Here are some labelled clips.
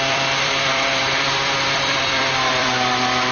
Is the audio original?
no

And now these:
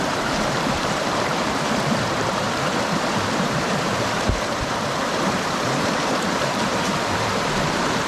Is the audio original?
no